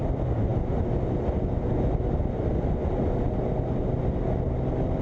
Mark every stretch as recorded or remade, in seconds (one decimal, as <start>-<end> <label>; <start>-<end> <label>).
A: 0.0-5.0 recorded